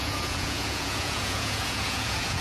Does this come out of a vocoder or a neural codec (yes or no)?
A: yes